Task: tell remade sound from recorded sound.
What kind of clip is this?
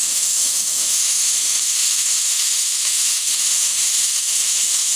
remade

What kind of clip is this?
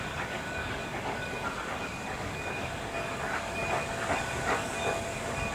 remade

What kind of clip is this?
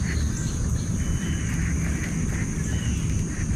recorded